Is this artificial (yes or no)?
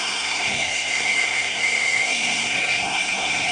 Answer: yes